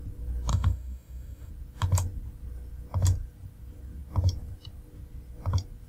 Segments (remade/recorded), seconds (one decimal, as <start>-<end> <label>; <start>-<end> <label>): 0.0-0.5 recorded; 0.5-1.5 remade; 1.5-5.9 recorded